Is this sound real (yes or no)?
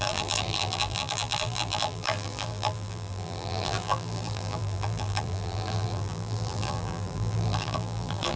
no